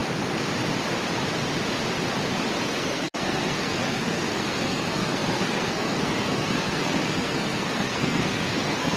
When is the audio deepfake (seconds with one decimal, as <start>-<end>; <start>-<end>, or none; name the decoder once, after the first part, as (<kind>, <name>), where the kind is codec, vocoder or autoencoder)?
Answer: 2.6-9.0 (codec, SNAC)